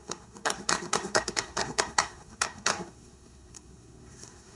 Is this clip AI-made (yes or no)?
yes